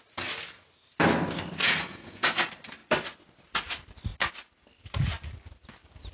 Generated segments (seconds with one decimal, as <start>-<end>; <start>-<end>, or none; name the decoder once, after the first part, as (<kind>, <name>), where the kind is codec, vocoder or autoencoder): 1.6-2.4 (vocoder, Vocos)